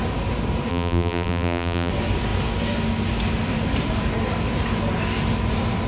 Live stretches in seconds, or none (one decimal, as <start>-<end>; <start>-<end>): 0.0-0.7; 1.9-5.9